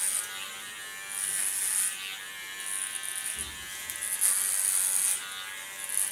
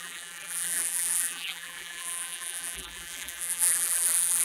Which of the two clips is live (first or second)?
first